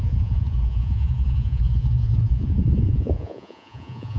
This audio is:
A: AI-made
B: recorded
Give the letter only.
A